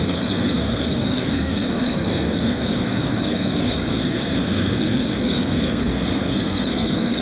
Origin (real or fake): fake